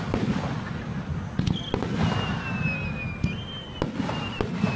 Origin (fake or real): real